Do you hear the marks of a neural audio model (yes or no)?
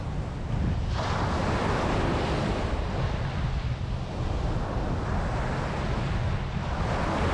no